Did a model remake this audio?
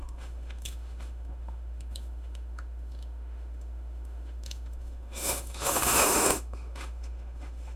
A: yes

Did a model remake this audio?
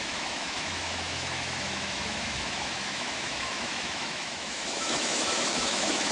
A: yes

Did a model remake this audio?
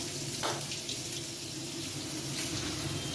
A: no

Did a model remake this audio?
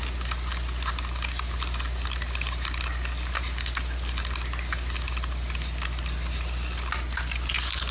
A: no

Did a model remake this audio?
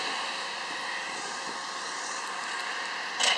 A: no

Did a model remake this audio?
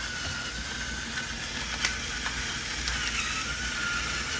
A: no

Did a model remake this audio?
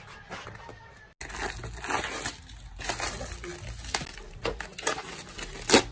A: no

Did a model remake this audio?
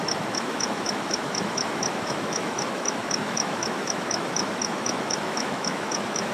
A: yes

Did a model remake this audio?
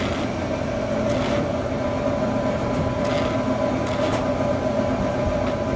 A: no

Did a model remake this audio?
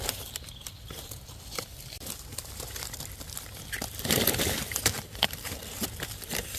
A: no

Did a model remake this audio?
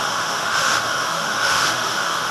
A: yes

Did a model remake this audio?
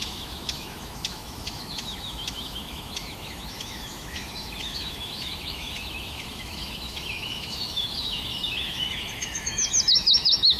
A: yes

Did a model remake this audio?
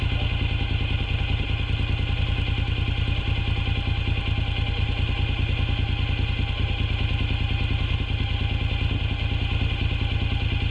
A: no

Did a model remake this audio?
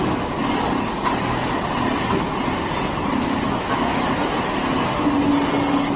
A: no